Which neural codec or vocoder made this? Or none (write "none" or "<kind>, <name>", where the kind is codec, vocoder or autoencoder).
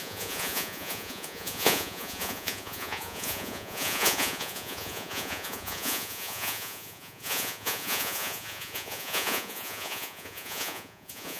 vocoder, Vocos